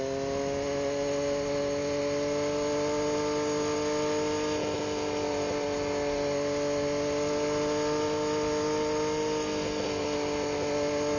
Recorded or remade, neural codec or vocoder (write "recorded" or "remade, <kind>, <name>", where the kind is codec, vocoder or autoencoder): recorded